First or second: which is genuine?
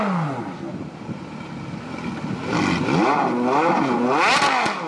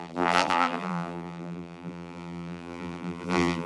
first